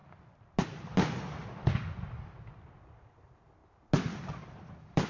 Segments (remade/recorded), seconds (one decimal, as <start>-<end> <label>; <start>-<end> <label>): 0.0-0.8 recorded; 0.8-3.6 remade; 3.6-4.5 recorded; 4.5-5.1 remade

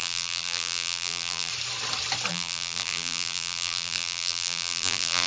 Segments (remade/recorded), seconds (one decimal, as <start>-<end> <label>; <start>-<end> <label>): 0.0-1.5 remade; 1.5-2.3 recorded; 2.3-5.3 remade

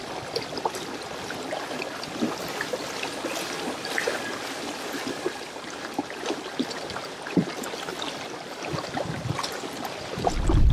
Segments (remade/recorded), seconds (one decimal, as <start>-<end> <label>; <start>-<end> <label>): 0.0-10.7 recorded

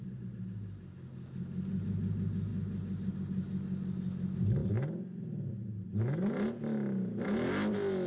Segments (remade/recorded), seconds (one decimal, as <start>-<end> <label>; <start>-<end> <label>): 0.0-8.1 recorded

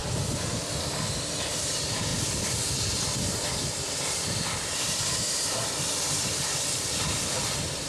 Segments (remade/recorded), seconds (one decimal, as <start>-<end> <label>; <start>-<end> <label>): 0.0-1.5 recorded; 1.5-7.9 remade